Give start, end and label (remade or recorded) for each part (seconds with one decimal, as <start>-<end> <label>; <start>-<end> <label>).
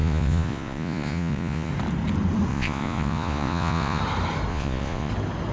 0.0-1.7 remade; 1.7-2.5 recorded; 2.5-4.0 remade; 4.0-4.5 recorded; 4.5-5.1 remade; 5.1-5.5 recorded